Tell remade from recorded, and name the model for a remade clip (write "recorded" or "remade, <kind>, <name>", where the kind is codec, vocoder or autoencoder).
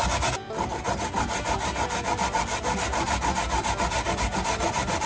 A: remade, vocoder, BigVGAN v2